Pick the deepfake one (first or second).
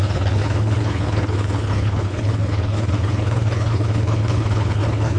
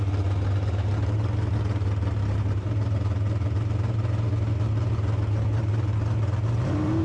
first